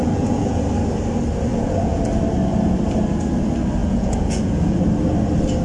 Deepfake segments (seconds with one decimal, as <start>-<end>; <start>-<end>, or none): 0.0-0.6; 1.5-2.0; 3.8-4.8